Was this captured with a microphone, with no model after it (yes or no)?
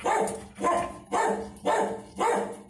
yes